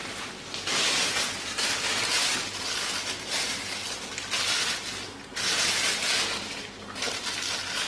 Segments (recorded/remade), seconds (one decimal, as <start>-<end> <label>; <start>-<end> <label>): 0.0-7.9 recorded